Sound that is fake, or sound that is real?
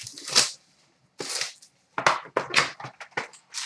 real